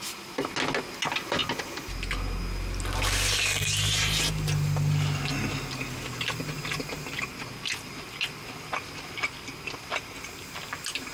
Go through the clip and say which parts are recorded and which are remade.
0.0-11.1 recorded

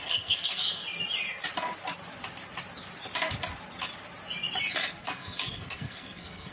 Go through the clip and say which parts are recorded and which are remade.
0.0-0.8 remade; 0.8-4.7 recorded; 4.7-6.5 remade